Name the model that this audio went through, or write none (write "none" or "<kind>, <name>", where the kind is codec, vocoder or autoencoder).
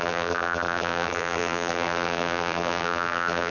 vocoder, BigVGAN v2